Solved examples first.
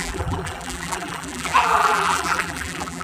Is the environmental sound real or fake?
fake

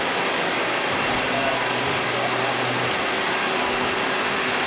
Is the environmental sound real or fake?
real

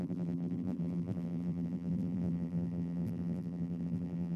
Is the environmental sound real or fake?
fake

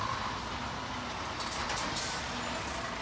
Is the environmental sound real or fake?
real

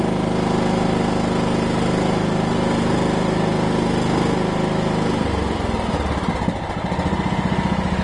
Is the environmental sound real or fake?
real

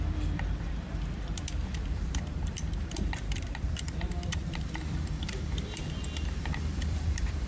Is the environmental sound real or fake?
fake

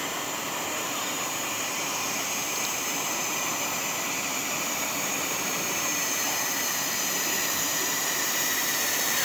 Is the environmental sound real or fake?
fake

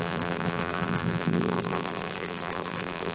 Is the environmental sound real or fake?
fake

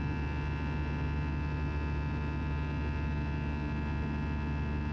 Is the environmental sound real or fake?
real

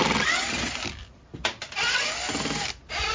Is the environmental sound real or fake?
real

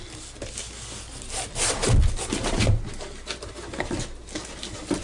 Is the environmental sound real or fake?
real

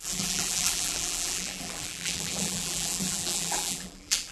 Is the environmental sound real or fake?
fake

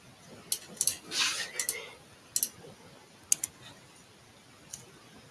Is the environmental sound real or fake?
real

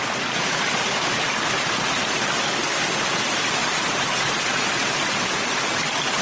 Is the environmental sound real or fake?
real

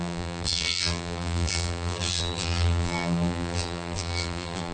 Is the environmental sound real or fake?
fake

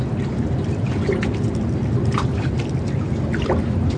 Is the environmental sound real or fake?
fake